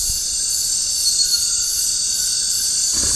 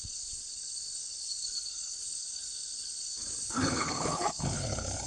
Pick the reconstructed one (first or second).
second